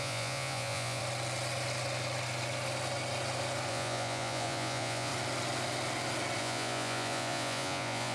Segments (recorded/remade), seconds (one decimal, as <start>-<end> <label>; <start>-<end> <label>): 0.0-1.0 remade; 1.0-3.7 recorded; 3.7-5.1 remade; 5.1-6.4 recorded; 6.4-8.1 remade